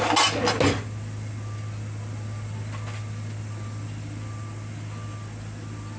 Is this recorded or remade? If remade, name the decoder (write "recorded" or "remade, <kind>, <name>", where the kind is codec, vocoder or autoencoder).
recorded